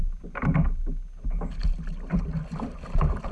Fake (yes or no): no